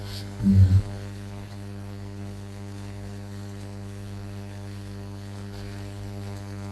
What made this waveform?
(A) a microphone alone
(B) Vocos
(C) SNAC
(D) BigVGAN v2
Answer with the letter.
C